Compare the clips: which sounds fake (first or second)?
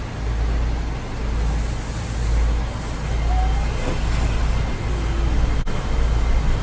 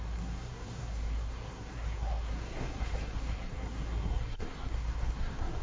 second